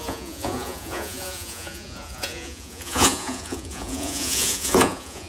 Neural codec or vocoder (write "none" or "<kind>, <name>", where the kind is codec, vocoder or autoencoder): vocoder, Vocos